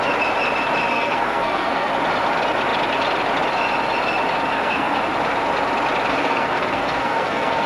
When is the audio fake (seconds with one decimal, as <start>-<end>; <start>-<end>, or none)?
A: 0.9-1.9; 4.5-5.0; 6.1-7.7